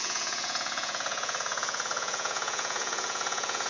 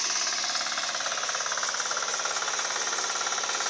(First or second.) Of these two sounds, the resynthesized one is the first